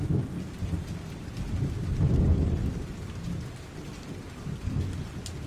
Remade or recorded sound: recorded